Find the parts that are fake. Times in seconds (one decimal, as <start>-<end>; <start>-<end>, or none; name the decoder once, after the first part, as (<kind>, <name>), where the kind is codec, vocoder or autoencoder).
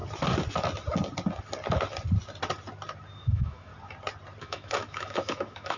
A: 3.2-3.7 (autoencoder, DAC-VAE); 4.4-5.8